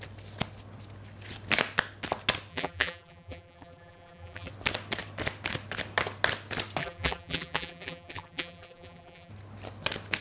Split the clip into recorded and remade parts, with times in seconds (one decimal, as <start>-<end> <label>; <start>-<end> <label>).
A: 0.0-2.5 recorded; 2.5-4.5 remade; 4.5-6.8 recorded; 6.8-9.3 remade; 9.3-10.2 recorded